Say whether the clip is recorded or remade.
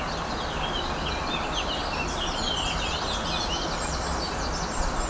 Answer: recorded